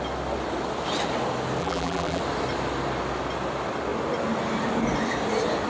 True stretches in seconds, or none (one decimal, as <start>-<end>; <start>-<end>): 0.0-1.6; 2.2-5.7